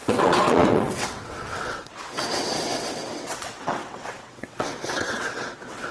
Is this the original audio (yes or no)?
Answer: no